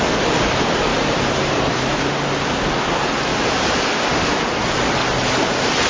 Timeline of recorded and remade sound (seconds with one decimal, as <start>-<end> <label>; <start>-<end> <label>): 0.0-0.9 recorded; 0.9-1.5 remade; 1.5-3.3 recorded; 3.3-3.8 remade; 3.8-5.9 recorded